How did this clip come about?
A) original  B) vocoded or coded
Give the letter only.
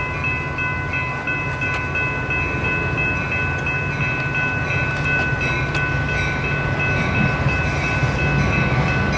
A